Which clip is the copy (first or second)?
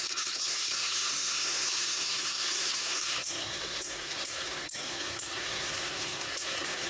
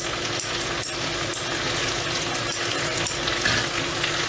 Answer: first